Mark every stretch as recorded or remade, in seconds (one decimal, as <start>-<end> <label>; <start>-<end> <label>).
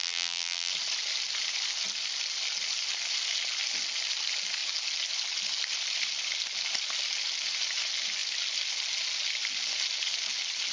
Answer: 0.0-0.7 remade; 0.7-10.7 recorded